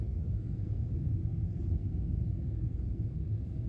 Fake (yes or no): yes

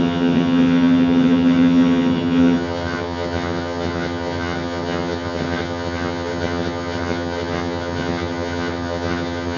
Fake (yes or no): yes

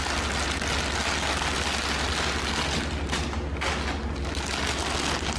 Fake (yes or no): no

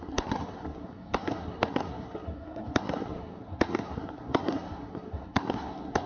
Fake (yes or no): yes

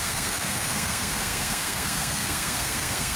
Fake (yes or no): yes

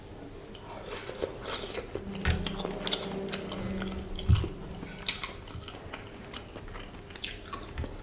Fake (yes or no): no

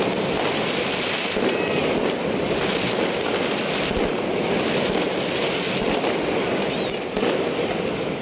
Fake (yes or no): no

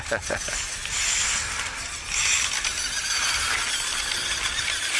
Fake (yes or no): yes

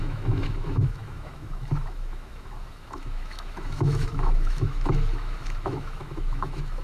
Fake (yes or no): yes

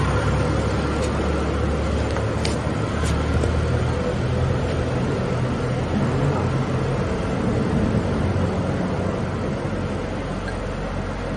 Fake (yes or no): no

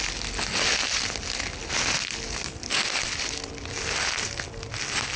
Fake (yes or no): no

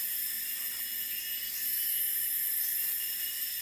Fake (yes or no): no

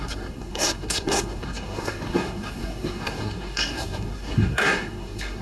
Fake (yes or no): yes